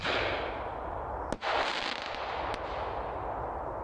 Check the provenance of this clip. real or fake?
real